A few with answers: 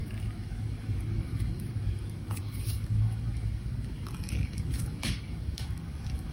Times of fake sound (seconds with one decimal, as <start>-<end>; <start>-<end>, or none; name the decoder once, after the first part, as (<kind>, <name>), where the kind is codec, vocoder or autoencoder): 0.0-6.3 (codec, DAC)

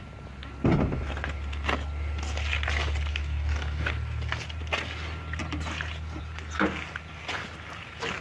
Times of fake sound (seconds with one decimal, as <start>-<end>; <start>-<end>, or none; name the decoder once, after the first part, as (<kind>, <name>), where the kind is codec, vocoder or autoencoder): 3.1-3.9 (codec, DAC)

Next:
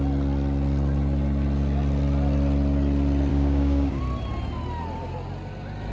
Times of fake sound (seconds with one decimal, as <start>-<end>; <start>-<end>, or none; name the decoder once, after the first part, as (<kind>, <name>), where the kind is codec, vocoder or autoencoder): 3.3-4.0 (codec, DAC)

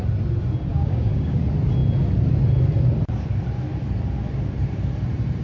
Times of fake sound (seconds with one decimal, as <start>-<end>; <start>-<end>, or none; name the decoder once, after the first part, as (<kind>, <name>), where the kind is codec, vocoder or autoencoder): 0.7-1.4 (codec, DAC)

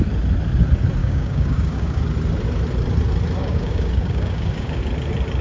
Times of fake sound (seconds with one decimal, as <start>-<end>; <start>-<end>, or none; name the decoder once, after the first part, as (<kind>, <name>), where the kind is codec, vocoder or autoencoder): 1.0-2.0 (codec, DAC); 3.4-4.8

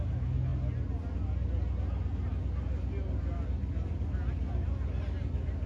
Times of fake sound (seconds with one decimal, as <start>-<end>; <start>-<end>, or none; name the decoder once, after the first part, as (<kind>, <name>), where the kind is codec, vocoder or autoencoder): none

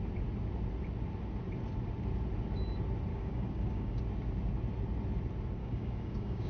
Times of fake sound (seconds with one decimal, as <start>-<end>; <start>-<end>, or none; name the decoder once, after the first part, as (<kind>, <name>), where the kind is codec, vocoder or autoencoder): 3.1-4.0 (codec, DAC); 5.6-6.5

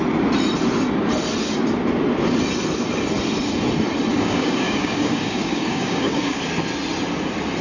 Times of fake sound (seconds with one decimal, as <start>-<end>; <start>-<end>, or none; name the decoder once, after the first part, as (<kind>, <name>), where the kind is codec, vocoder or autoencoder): 4.1-6.4 (codec, DAC)